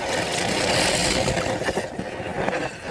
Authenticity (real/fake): real